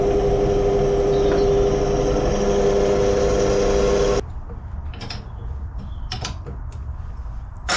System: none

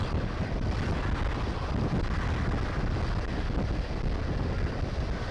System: none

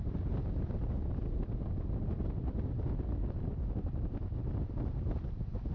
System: none